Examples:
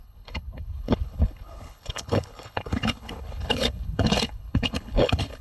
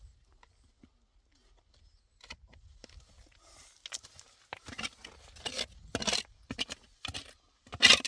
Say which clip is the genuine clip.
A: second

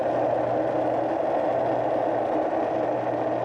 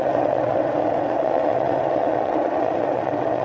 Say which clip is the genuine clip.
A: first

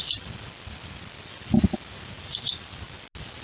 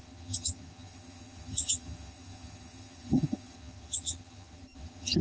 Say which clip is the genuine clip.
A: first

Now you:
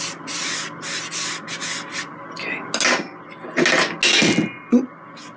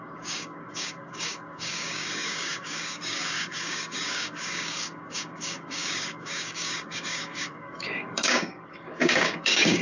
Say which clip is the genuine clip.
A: first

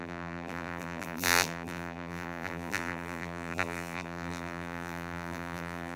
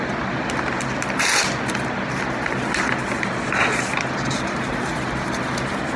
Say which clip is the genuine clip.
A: second